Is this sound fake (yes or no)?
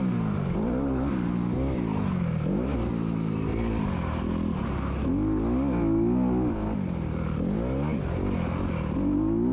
no